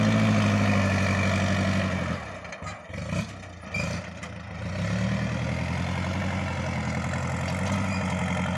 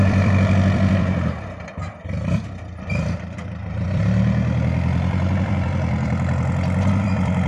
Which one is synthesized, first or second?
second